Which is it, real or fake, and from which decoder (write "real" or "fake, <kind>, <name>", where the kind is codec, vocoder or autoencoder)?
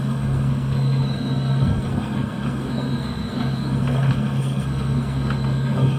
fake, codec, SNAC